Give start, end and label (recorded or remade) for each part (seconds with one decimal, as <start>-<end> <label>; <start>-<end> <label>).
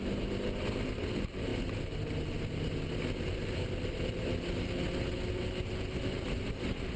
0.0-7.0 recorded